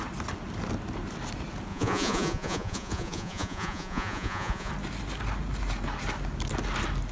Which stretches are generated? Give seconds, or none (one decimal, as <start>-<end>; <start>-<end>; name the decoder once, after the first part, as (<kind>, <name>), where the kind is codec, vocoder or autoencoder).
1.7-4.7 (vocoder, Vocos)